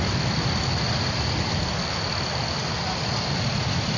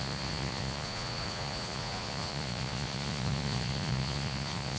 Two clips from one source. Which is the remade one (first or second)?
second